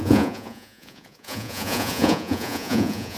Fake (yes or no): yes